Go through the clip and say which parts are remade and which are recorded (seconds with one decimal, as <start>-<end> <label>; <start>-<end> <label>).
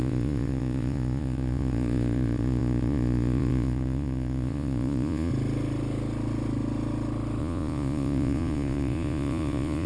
0.0-5.3 remade; 5.3-7.4 recorded; 7.4-9.9 remade